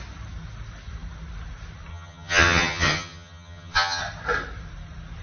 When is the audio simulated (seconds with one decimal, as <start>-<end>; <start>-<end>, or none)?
1.9-4.0